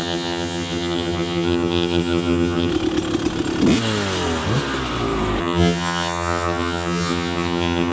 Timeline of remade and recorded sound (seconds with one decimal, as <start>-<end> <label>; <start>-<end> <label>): 0.0-2.7 remade; 2.7-5.4 recorded; 5.4-7.9 remade